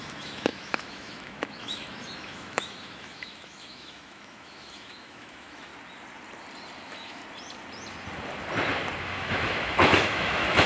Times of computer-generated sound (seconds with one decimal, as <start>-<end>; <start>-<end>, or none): 0.0-5.7; 6.8-7.2; 9.0-10.7